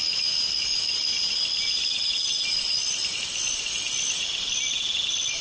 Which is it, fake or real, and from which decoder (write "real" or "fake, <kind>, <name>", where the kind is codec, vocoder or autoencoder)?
real